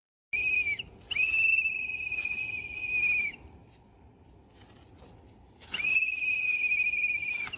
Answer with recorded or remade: recorded